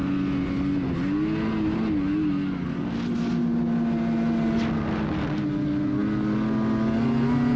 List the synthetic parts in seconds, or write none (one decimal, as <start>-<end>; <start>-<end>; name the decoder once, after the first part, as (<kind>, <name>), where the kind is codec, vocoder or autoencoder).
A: none